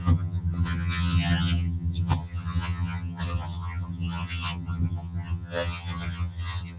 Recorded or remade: remade